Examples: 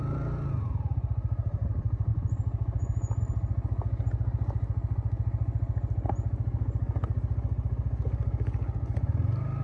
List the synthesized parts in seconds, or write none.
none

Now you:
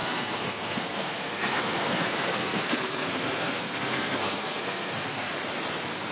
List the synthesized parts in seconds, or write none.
0.0-5.3